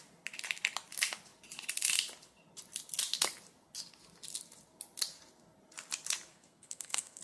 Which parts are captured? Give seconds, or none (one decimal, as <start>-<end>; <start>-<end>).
0.0-6.3